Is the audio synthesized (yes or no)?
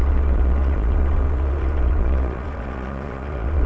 yes